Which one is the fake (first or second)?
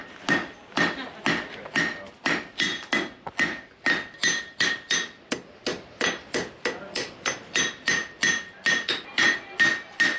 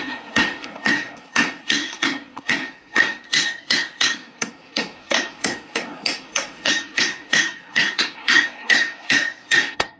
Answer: second